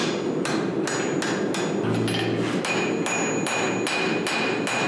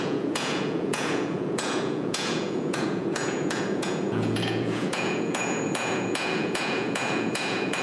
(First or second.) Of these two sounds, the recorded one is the first